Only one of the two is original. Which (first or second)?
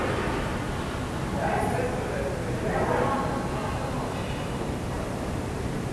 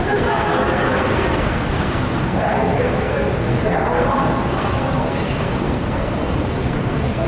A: first